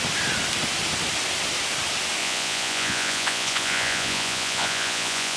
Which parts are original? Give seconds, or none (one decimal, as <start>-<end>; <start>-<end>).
0.0-2.2